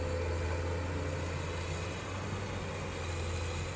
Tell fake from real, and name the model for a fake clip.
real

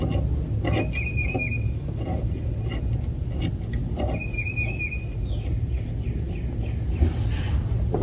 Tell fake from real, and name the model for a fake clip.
real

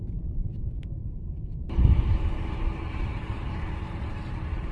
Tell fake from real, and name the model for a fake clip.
fake, vocoder, BigVGAN v2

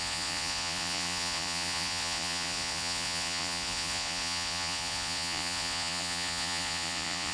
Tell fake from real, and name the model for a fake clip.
fake, vocoder, Vocos